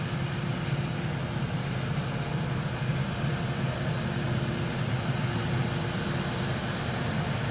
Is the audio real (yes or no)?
yes